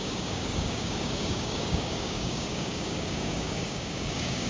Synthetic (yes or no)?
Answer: yes